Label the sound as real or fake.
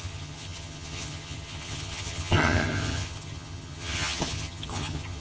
fake